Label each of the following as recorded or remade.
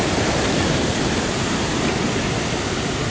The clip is recorded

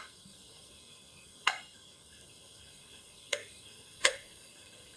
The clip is remade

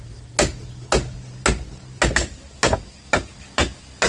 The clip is recorded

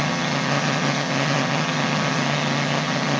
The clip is remade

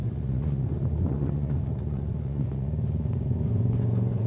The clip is remade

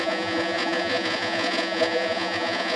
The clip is remade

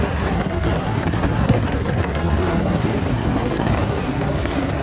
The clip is remade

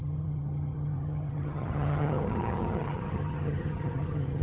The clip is remade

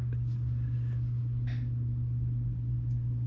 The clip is recorded